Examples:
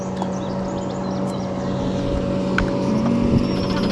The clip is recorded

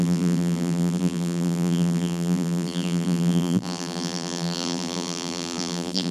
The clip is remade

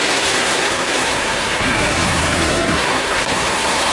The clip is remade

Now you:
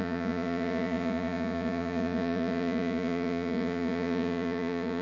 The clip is remade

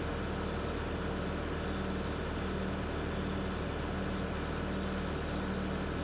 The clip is recorded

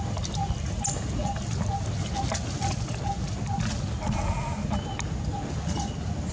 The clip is recorded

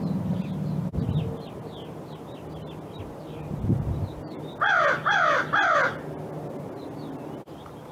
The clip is recorded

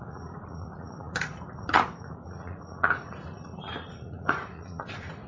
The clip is remade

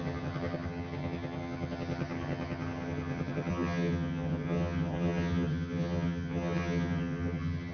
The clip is remade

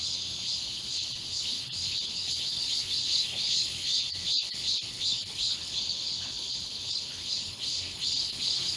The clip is remade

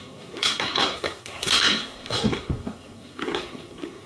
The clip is remade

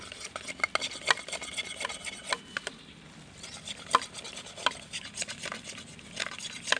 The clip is recorded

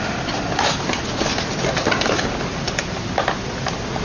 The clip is recorded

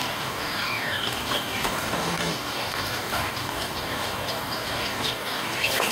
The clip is remade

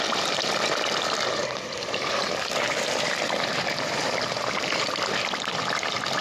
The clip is recorded